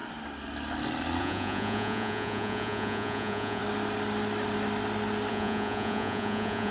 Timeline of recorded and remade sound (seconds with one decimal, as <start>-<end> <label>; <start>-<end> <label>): 0.0-1.2 recorded; 1.2-3.6 remade; 3.6-5.3 recorded; 5.3-6.7 remade

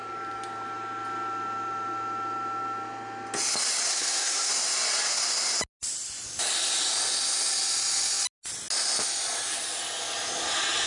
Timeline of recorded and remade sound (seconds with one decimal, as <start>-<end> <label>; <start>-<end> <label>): 0.0-3.9 recorded; 3.9-4.5 remade; 4.5-10.9 recorded